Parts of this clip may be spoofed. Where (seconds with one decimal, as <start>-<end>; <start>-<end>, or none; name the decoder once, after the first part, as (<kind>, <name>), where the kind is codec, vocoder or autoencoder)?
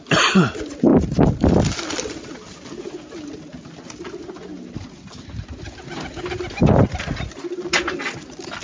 none